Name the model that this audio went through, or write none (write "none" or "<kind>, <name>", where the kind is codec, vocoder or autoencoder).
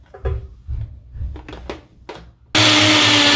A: none